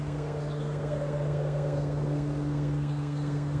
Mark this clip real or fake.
fake